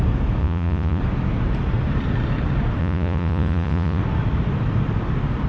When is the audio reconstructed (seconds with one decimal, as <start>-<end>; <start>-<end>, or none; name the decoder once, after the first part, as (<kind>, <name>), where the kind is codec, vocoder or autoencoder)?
0.4-1.0 (vocoder, Vocos); 2.8-4.0